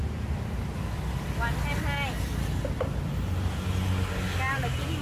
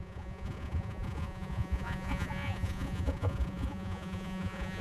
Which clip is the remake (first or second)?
second